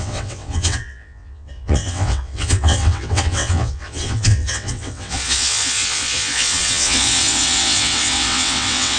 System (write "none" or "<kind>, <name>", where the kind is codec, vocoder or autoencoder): vocoder, WaveNeXt